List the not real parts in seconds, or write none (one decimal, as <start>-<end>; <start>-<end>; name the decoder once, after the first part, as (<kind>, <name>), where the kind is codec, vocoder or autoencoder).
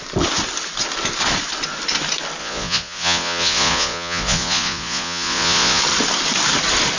2.4-5.8 (vocoder, Vocos)